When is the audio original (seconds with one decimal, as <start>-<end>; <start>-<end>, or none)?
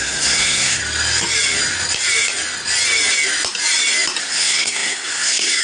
0.8-4.2